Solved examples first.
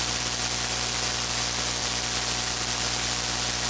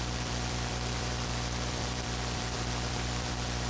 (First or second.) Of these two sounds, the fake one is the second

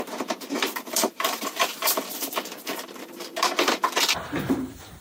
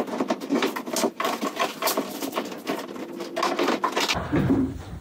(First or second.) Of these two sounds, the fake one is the first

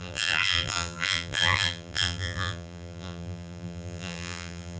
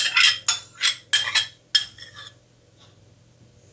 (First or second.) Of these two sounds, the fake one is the first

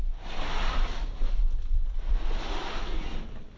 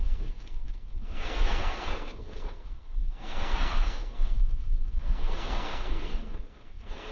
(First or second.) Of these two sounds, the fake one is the second